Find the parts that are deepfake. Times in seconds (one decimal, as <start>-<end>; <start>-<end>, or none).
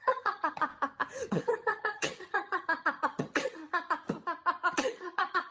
0.0-0.7; 1.3-3.6; 4.7-5.5